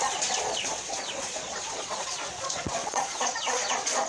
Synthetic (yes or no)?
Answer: yes